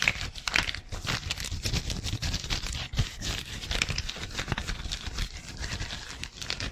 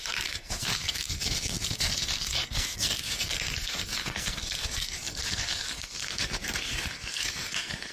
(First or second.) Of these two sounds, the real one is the first